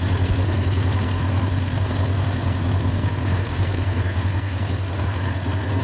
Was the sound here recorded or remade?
remade